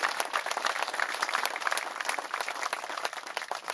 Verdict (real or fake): real